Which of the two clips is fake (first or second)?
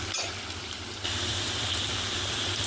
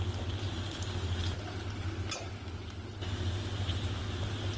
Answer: first